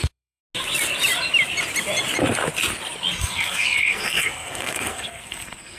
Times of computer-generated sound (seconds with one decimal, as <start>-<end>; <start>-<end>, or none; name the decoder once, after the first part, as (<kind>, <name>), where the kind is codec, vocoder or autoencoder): 0.0-0.4 (codec, SNAC); 3.2-5.8

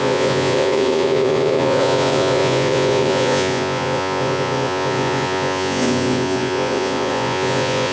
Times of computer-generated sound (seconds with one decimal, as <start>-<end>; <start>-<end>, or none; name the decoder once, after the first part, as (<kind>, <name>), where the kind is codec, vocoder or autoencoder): 0.0-7.9 (vocoder, Vocos)

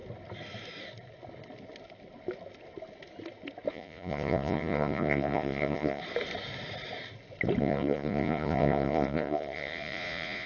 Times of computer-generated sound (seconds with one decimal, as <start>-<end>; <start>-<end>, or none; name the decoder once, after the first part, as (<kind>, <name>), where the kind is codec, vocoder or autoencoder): 3.7-6.0 (vocoder, Vocos); 7.6-10.5